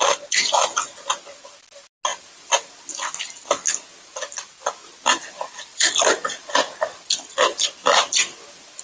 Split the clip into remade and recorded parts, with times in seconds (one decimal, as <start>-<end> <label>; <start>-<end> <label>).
0.0-2.1 recorded; 2.1-2.9 remade; 2.9-3.9 recorded; 3.9-8.8 remade